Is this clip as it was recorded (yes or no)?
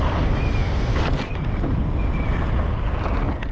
yes